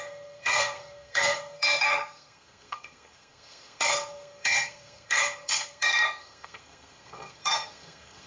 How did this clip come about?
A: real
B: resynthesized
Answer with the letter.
B